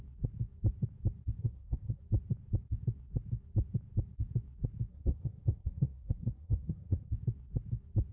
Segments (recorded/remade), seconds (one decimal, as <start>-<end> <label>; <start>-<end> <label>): 0.0-1.4 recorded; 1.4-2.0 remade; 2.0-4.9 recorded; 4.9-7.1 remade; 7.1-8.1 recorded